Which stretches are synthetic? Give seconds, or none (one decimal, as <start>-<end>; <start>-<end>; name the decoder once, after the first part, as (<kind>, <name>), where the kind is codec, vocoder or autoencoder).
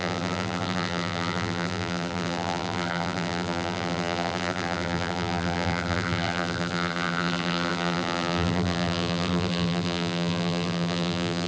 0.0-11.5 (vocoder, BigVGAN v2)